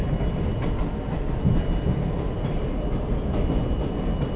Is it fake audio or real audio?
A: real